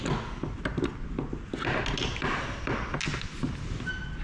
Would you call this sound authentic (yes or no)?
yes